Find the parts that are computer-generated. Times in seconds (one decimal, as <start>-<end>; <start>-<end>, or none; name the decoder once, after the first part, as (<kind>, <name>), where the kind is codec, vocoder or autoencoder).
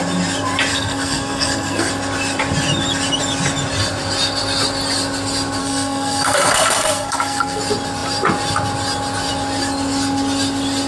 0.7-1.9 (codec, SNAC); 5.6-7.6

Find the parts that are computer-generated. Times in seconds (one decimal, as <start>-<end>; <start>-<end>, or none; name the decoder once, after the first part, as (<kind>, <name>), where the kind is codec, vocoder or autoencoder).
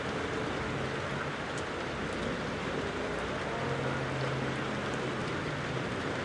none